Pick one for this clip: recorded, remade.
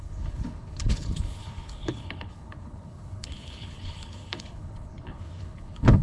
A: remade